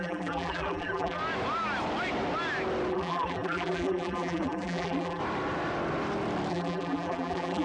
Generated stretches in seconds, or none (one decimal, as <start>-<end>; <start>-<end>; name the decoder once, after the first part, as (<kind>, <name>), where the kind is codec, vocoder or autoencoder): 0.0-1.2 (vocoder, BigVGAN v2); 2.9-5.2; 6.5-7.6